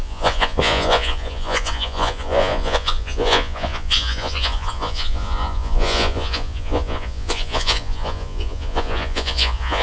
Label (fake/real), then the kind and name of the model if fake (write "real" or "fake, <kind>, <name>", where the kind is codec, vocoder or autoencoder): fake, vocoder, Vocos